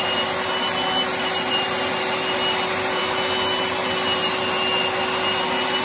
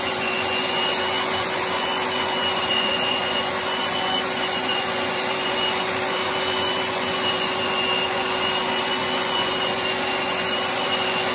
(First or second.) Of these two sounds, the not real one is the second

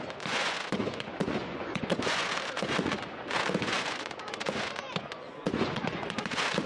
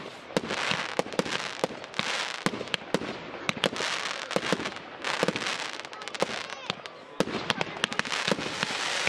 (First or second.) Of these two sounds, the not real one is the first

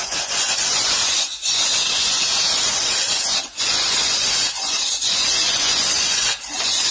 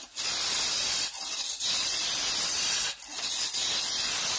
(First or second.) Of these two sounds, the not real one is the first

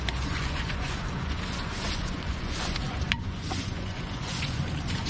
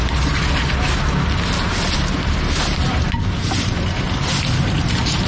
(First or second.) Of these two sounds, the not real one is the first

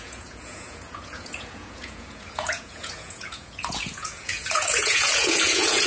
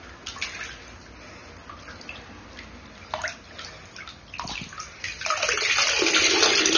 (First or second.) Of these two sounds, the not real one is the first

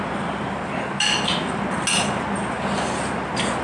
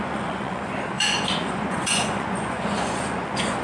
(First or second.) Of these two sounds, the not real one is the second